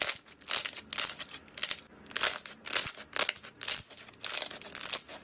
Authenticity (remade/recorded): recorded